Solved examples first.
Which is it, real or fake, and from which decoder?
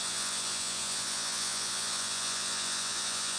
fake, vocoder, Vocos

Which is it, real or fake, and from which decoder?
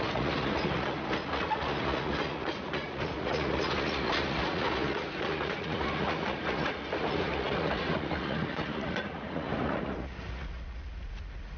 fake, vocoder, Vocos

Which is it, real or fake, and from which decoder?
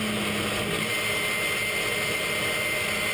real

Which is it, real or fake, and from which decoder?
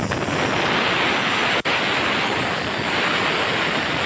real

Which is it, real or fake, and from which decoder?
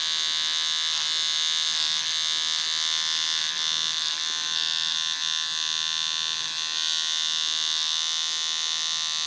real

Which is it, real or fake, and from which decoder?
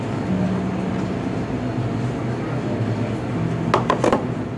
real